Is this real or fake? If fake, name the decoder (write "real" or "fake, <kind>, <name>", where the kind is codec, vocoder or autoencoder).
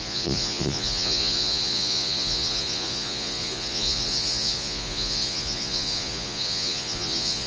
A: fake, vocoder, Vocos